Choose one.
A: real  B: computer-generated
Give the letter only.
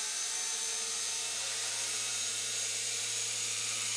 B